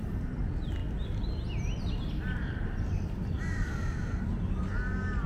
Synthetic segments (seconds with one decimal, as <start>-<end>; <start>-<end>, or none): none